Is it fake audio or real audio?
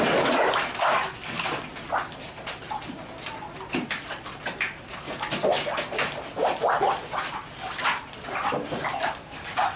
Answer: real